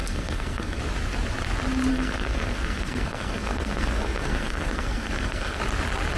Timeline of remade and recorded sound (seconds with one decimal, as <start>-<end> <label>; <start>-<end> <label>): 0.0-0.8 remade; 0.8-1.9 recorded; 1.9-5.6 remade; 5.6-6.2 recorded